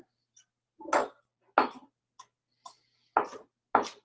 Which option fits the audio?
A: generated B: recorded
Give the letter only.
B